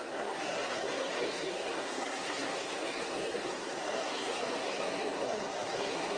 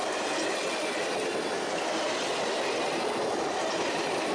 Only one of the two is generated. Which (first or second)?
first